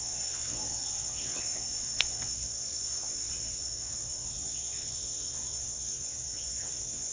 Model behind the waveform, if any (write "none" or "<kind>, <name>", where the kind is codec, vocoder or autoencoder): vocoder, WaveNeXt